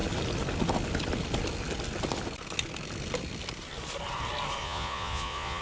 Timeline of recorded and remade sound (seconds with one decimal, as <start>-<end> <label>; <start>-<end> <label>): 0.0-4.6 recorded; 4.6-5.6 remade